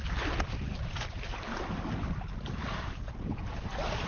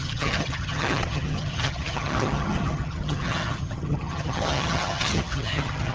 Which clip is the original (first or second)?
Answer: first